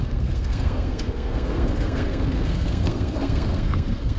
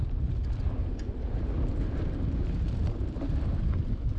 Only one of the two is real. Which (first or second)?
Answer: second